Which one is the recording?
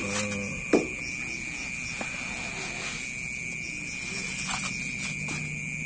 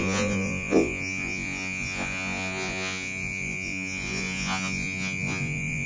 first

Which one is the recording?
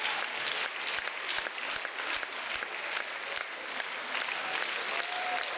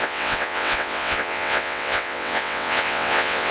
first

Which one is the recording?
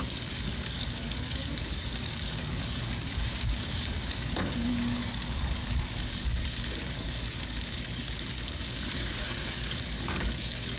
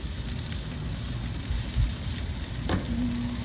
second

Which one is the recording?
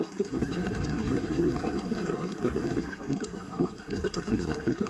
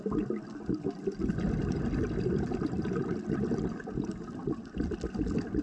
second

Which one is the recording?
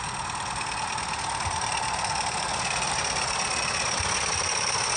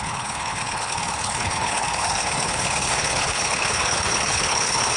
first